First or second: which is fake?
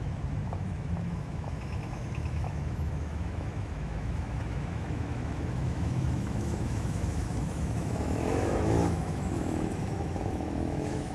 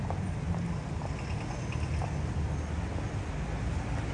first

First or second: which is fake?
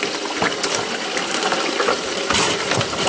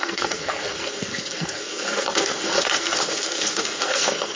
second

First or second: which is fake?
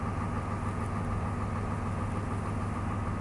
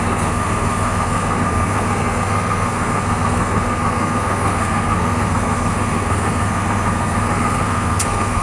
second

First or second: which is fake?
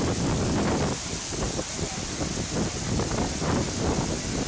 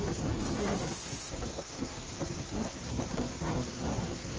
second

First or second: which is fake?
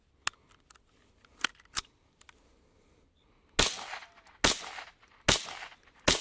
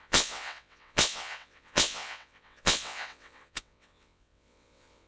second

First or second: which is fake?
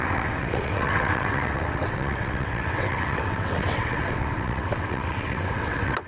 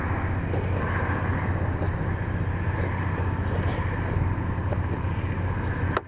first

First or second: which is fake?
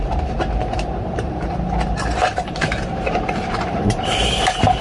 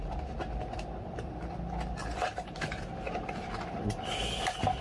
first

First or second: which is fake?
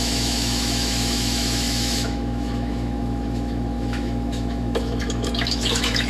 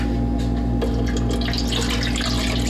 first